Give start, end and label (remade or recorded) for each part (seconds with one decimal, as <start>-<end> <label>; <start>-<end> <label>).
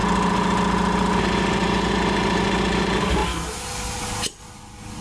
0.0-5.0 recorded